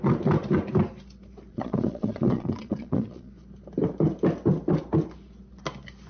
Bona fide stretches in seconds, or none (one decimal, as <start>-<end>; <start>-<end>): 0.0-1.5; 3.3-6.1